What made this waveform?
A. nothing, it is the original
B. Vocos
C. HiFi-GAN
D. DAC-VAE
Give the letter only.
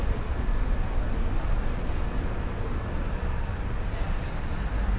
A